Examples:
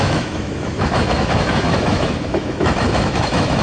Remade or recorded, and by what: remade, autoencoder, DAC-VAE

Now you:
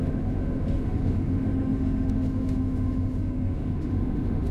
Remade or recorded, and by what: remade, autoencoder, DAC-VAE